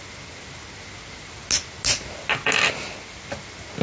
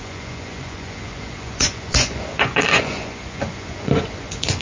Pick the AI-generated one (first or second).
second